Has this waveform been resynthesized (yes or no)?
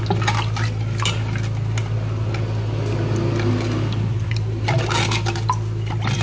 no